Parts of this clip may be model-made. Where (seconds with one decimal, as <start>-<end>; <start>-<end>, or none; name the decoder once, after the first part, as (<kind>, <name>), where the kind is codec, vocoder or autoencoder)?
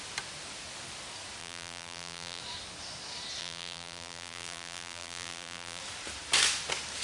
1.4-2.4 (vocoder, BigVGAN v2); 3.4-5.8